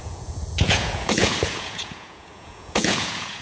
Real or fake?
fake